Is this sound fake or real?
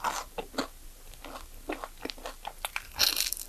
real